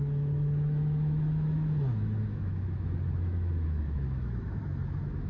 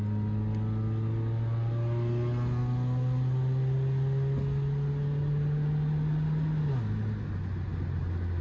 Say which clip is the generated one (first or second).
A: first